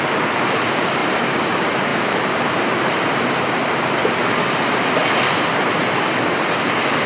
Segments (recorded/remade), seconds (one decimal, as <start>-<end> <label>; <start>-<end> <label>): 0.0-1.0 recorded; 1.0-1.5 remade; 1.5-1.9 recorded; 1.9-3.2 remade; 3.2-7.1 recorded